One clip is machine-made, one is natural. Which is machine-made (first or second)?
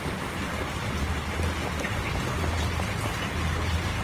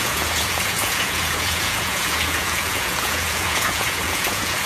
second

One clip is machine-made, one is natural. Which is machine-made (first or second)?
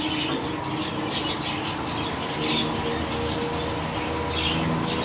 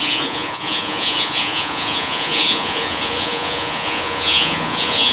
second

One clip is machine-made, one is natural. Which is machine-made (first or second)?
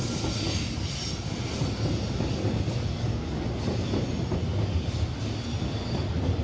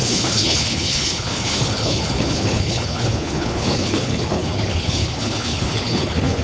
second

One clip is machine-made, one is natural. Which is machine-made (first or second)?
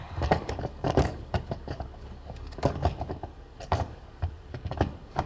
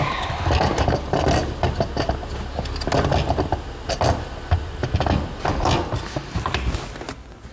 first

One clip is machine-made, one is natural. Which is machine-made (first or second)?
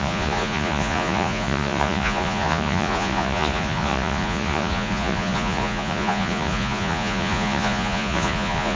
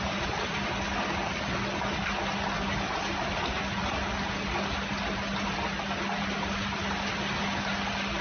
first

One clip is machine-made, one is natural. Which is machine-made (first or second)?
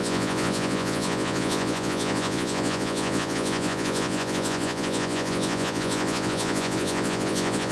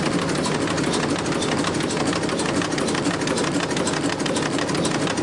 first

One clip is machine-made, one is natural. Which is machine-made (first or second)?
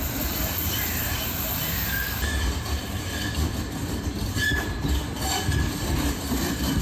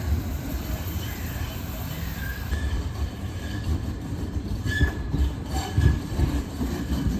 second